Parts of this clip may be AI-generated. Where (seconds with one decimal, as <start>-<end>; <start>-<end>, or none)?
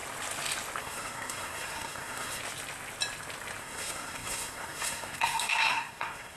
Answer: 0.8-2.4; 3.6-6.4